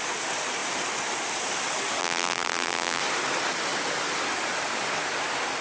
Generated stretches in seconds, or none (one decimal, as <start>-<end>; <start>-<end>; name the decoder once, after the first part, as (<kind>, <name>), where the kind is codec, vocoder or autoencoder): 2.0-3.0 (vocoder, BigVGAN v2)